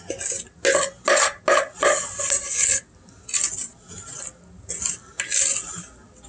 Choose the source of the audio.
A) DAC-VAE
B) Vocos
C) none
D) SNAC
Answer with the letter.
C